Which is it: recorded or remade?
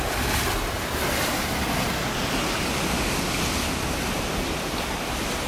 recorded